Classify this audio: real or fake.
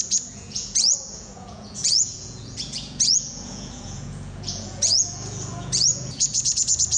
fake